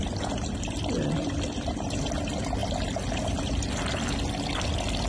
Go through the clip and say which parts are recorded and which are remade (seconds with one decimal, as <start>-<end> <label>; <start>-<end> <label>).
0.0-5.1 recorded